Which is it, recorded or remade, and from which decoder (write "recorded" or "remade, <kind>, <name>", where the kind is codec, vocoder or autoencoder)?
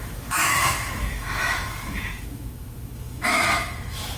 remade, autoencoder, DAC-VAE